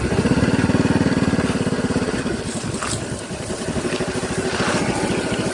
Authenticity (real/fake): real